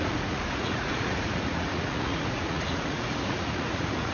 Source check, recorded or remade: remade